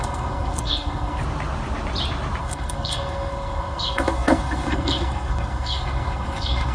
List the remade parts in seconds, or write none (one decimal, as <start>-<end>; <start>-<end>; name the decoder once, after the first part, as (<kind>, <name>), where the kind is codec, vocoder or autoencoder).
0.0-1.2 (codec, SNAC); 2.4-6.7